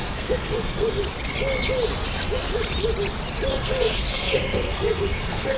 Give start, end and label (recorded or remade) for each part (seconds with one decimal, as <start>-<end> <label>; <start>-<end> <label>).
0.0-1.0 remade; 1.0-3.5 recorded; 3.5-5.6 remade